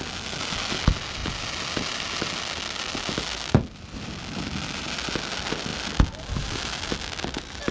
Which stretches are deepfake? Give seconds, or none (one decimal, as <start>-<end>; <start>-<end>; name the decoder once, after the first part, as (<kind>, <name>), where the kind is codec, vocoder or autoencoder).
none

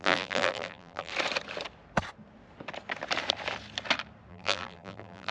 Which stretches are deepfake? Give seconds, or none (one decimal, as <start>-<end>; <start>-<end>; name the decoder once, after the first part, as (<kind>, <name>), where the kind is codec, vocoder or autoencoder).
0.0-1.1 (vocoder, BigVGAN v2); 4.3-5.3

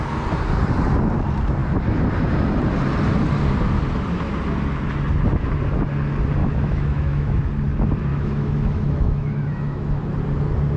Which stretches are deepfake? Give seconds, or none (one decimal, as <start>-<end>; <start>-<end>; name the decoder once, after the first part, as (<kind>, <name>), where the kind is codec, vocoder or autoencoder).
6.4-7.4 (autoencoder, DAC-VAE); 8.1-10.0

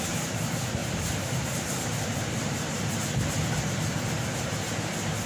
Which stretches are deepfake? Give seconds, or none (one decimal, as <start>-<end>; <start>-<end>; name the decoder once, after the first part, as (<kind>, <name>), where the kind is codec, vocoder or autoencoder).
0.8-2.8 (vocoder, BigVGAN v2)